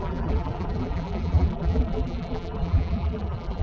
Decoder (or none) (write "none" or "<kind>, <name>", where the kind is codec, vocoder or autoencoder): vocoder, BigVGAN v2